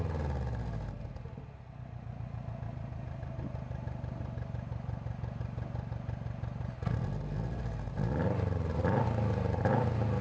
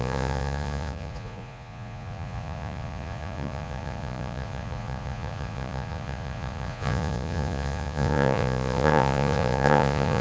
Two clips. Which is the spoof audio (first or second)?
second